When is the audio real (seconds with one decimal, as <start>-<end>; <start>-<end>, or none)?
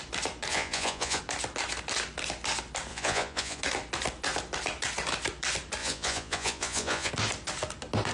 0.0-0.5; 1.2-2.9; 3.6-5.8; 7.1-8.1